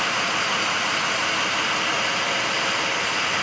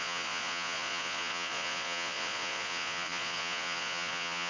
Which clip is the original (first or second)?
first